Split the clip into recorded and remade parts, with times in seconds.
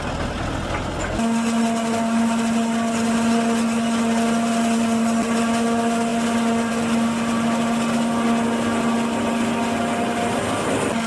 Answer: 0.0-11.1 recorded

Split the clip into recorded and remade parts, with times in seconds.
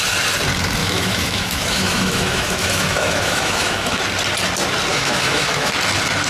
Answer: 0.0-0.8 recorded; 0.8-4.0 remade; 4.0-4.9 recorded; 4.9-5.7 remade; 5.7-6.3 recorded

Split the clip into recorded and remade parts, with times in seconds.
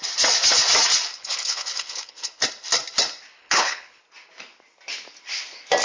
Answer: 0.0-1.1 recorded; 1.1-2.3 remade; 2.3-3.4 recorded; 3.4-4.0 remade; 4.0-5.8 recorded